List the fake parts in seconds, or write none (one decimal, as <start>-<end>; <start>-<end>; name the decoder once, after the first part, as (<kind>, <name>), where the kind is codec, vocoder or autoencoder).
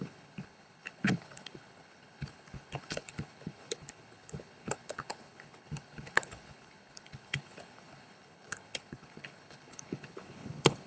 0.0-10.9 (codec, HILCodec)